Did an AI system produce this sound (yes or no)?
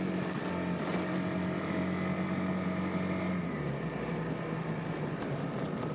no